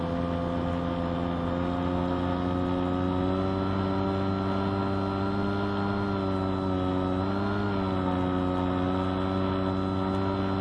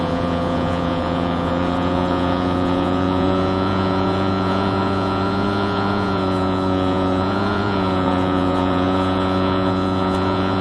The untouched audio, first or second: first